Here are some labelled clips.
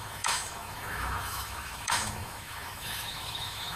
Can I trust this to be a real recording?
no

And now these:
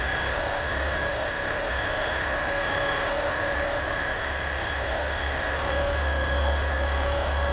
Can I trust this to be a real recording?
no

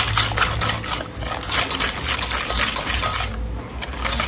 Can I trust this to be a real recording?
yes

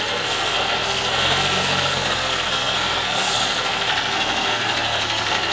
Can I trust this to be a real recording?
no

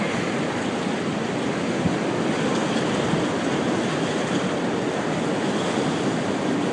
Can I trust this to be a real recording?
yes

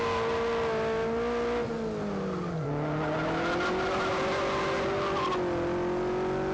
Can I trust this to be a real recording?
yes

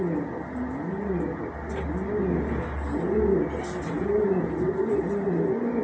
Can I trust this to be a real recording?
yes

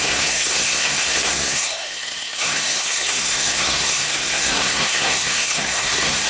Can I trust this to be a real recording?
no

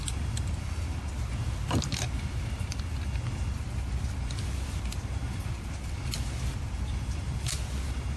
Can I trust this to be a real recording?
yes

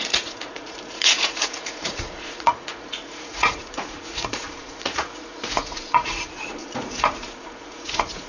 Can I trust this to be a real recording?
no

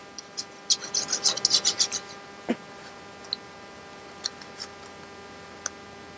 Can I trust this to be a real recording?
yes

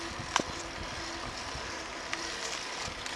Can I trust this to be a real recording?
yes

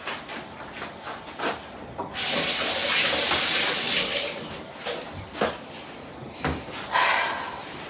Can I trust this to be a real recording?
yes